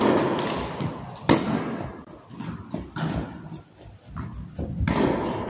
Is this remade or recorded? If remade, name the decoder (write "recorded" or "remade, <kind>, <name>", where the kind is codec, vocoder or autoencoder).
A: recorded